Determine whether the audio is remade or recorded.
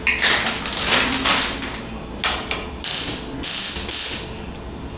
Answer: recorded